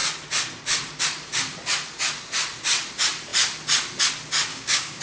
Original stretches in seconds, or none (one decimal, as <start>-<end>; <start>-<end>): 0.0-4.5